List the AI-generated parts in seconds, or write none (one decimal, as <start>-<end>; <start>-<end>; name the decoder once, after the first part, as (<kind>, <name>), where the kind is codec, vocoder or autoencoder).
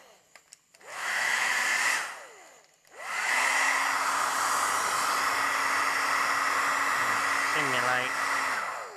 0.9-1.5 (autoencoder, DAC-VAE)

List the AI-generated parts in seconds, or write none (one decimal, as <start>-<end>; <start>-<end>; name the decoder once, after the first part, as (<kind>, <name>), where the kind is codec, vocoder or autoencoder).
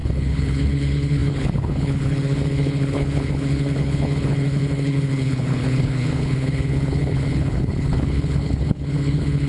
0.0-9.5 (codec, HILCodec)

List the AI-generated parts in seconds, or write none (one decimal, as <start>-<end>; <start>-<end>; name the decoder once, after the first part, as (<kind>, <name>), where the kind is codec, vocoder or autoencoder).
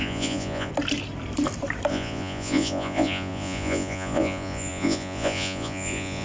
0.0-0.7 (vocoder, Vocos); 1.9-6.2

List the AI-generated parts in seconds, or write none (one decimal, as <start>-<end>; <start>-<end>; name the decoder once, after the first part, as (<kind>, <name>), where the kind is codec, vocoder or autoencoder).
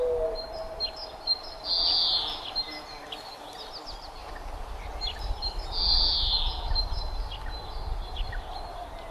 4.2-5.3 (vocoder, BigVGAN v2)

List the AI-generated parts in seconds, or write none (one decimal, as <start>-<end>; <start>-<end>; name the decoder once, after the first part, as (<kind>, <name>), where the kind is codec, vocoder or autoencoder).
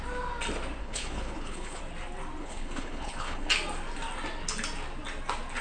0.8-1.8 (codec, HILCodec); 2.4-3.5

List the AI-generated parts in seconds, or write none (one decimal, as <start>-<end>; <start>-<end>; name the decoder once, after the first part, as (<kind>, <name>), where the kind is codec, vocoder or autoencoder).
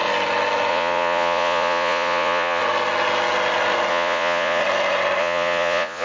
0.7-2.6 (vocoder, Vocos); 3.9-4.6; 5.2-6.0